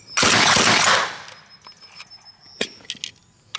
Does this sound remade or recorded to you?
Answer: recorded